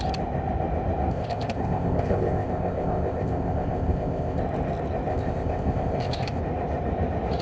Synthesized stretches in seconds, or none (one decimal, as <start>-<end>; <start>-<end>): 1.1-4.4; 5.1-6.4